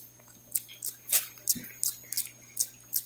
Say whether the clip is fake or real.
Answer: real